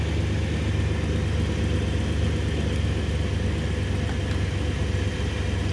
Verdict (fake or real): real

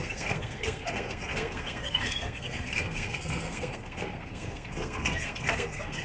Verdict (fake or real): fake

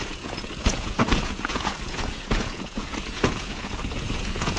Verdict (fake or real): fake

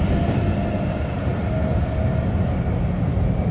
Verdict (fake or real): real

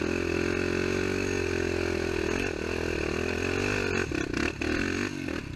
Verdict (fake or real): real